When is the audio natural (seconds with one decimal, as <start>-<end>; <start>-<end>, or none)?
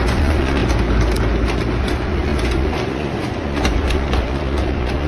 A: 0.6-1.8